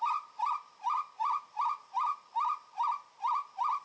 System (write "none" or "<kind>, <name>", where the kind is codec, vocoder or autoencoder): none